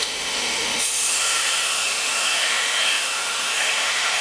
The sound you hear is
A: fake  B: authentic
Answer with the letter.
A